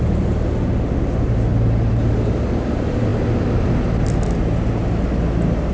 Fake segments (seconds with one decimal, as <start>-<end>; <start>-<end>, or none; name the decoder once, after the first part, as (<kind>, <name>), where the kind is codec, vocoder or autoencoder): none